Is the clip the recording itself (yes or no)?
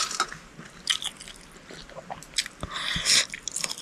yes